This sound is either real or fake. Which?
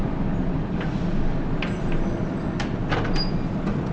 real